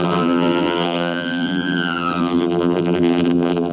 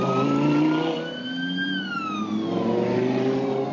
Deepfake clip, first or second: first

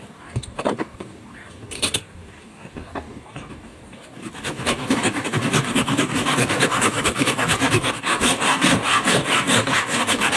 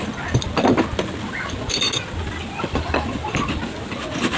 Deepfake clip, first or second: first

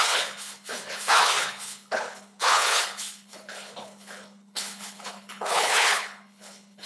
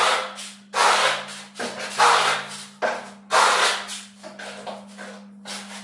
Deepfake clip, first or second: first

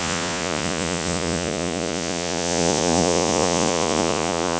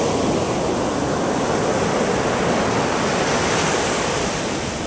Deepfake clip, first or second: first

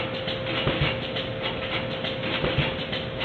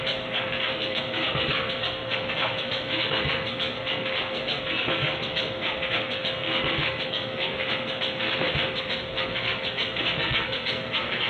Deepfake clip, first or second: second